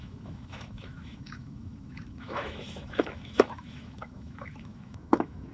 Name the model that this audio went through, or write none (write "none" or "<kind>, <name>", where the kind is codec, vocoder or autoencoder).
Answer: autoencoder, DAC-VAE